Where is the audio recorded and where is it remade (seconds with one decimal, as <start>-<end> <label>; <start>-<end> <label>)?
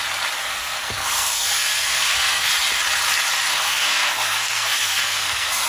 0.0-0.4 recorded; 0.4-2.5 remade; 2.5-3.5 recorded; 3.5-5.7 remade